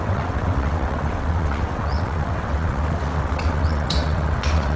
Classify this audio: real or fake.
fake